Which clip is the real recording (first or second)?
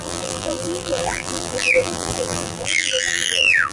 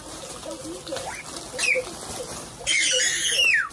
second